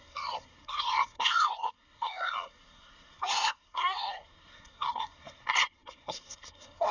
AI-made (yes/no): yes